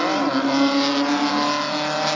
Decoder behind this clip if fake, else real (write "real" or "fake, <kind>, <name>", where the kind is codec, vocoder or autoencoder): real